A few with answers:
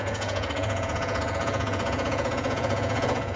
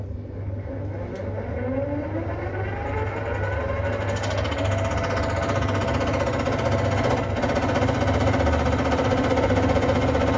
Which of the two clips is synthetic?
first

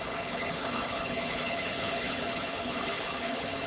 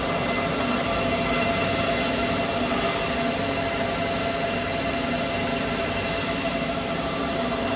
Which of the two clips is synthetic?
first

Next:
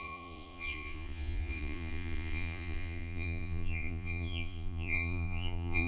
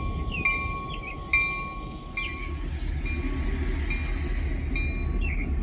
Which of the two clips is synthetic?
first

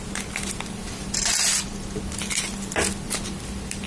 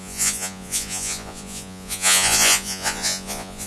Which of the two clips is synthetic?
second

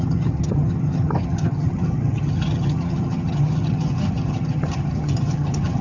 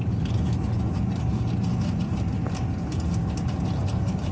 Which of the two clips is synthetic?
first